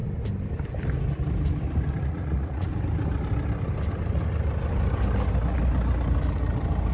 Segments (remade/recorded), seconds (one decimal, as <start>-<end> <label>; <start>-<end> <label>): 0.0-2.0 recorded; 2.0-2.7 remade; 2.7-6.9 recorded